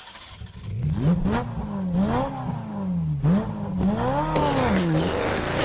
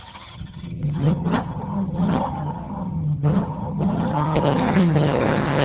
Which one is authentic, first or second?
first